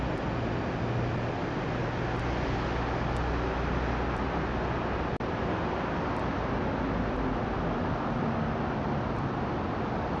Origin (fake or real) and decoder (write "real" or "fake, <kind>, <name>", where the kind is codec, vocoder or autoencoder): real